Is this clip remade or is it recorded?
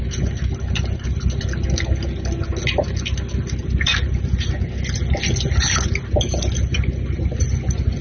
recorded